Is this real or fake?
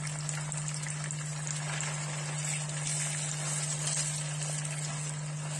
real